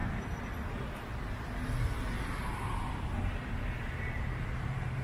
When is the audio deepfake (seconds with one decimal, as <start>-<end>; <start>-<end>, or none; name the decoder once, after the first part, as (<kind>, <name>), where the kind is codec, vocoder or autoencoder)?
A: 3.0-5.0 (vocoder, BigVGAN v2)